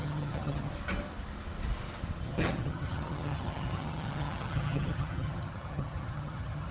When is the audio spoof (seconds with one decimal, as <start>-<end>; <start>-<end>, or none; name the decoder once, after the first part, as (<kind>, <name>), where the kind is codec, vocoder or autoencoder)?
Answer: 0.0-0.7 (vocoder, HiFi-GAN); 2.2-6.7